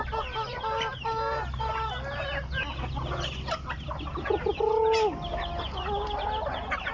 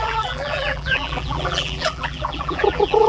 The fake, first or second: second